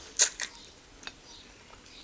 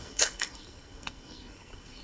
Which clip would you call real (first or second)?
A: first